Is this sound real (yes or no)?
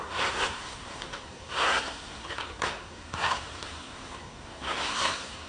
no